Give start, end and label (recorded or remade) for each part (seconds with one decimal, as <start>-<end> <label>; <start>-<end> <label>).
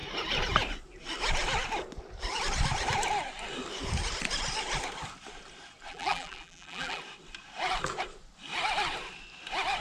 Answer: 0.0-5.9 recorded; 5.9-7.0 remade; 7.0-9.8 recorded